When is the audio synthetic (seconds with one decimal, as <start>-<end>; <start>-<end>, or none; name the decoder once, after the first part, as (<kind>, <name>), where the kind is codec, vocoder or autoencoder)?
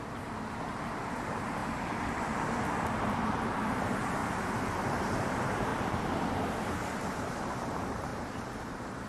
0.0-1.6 (vocoder, BigVGAN v2); 2.4-5.7; 6.7-9.1